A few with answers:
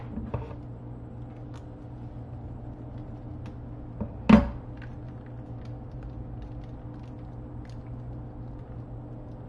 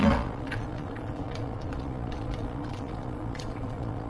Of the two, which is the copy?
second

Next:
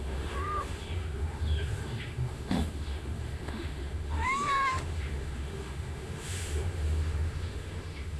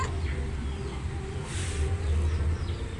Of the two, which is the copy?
first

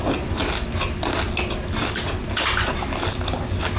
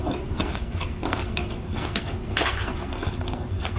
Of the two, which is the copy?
second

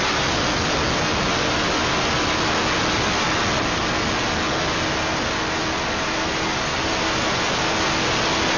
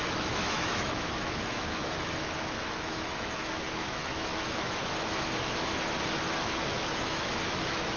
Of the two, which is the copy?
second